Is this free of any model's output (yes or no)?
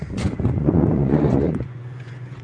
no